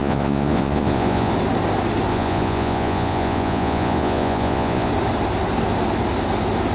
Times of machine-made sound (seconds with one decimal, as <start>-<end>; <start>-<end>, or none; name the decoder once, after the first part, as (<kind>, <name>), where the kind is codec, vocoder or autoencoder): 0.0-1.3 (vocoder, Vocos); 2.1-4.9